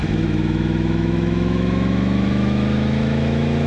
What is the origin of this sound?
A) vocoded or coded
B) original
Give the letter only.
A